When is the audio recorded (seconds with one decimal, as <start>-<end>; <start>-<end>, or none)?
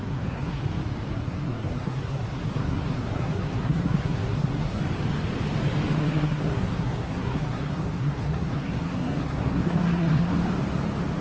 0.6-1.1; 4.8-6.0; 10.4-11.2